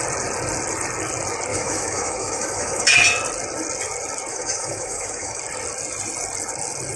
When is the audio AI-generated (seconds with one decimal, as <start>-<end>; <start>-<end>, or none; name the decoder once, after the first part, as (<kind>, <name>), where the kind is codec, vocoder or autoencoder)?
1.5-2.9 (autoencoder, DAC-VAE); 4.3-5.4